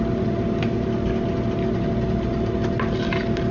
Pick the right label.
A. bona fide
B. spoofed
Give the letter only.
A